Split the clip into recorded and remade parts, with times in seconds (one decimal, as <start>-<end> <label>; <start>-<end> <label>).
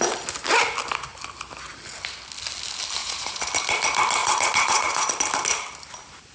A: 0.0-3.0 recorded; 3.0-3.5 remade; 3.5-4.2 recorded; 4.2-5.1 remade; 5.1-6.3 recorded